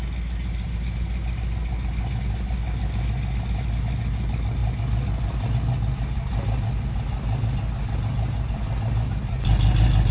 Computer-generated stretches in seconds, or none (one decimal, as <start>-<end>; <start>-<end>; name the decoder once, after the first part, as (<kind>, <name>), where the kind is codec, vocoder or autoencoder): none